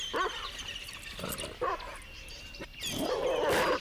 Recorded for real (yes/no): yes